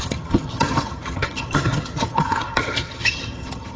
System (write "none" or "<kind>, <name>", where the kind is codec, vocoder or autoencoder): vocoder, HiFi-GAN